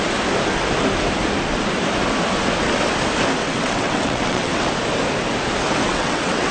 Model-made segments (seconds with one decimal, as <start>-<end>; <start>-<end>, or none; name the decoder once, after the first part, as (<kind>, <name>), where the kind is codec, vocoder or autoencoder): 3.4-4.7 (vocoder, WaveNeXt); 5.9-6.5